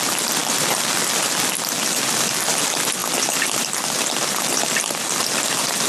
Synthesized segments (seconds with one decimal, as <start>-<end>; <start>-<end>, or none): none